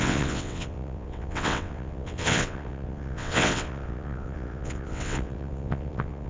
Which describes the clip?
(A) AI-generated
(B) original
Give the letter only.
A